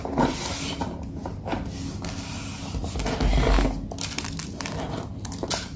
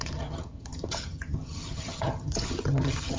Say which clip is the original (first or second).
first